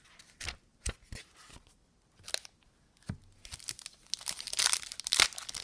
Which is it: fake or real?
real